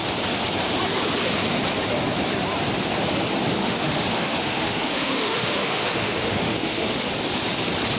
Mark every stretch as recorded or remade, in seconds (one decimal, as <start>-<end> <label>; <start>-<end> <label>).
0.0-3.6 recorded; 3.6-7.1 remade; 7.1-8.0 recorded